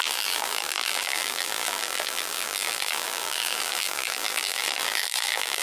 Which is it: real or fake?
fake